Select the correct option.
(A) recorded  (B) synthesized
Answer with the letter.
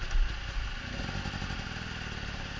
A